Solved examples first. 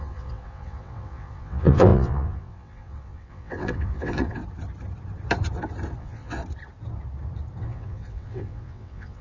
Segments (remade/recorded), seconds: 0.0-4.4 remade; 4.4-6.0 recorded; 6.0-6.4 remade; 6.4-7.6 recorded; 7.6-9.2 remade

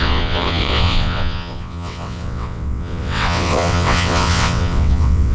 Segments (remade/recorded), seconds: 0.0-5.3 remade

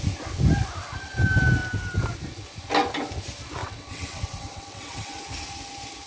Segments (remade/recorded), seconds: 0.0-3.6 recorded; 3.6-5.2 remade; 5.2-6.1 recorded

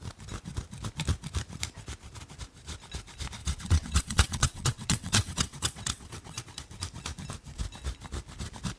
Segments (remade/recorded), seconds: 0.0-3.4 recorded; 3.4-6.4 remade; 6.4-8.8 recorded

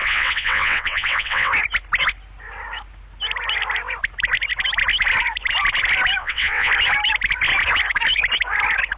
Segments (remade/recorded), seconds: 0.0-1.5 remade; 1.5-6.2 recorded; 6.2-6.7 remade; 6.7-9.0 recorded